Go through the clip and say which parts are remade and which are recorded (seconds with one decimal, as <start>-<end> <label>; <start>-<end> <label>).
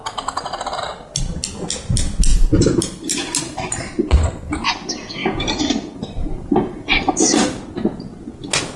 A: 0.0-2.3 recorded; 2.3-4.7 remade; 4.7-5.2 recorded; 5.2-7.1 remade; 7.1-8.8 recorded